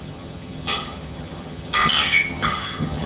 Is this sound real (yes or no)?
no